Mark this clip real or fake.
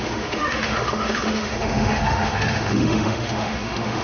fake